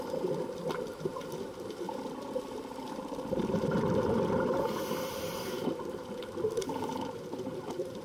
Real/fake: fake